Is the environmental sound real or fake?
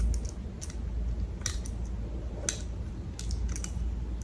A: real